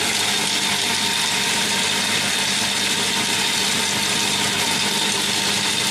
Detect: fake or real real